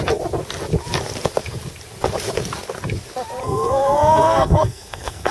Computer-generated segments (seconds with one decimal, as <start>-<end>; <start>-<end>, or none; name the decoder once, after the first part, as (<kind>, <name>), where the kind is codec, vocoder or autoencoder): 3.4-5.3 (codec, SNAC)